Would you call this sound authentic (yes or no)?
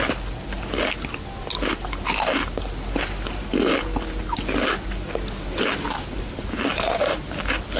yes